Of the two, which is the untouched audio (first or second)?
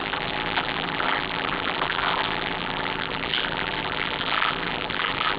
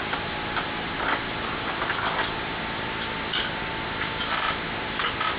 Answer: second